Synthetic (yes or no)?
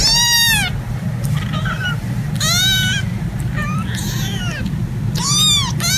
no